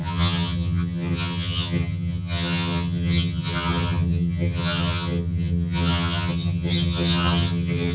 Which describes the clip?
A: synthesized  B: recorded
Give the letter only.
A